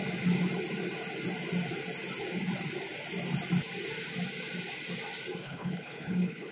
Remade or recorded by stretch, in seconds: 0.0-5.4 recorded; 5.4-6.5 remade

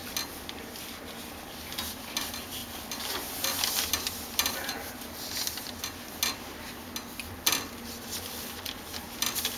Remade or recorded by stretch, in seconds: 0.0-9.6 recorded